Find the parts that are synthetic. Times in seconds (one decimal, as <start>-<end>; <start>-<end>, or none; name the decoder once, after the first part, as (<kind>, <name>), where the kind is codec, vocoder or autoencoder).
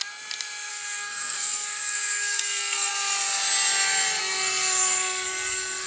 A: 0.7-2.9 (codec, SNAC); 4.2-5.9